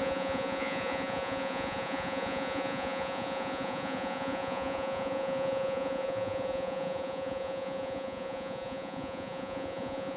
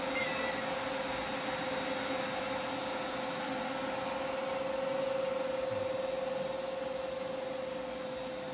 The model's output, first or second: first